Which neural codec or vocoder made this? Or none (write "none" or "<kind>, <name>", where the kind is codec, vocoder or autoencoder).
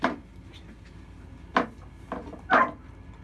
none